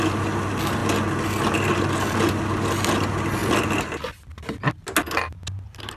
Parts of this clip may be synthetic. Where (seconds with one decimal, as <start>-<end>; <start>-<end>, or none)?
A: none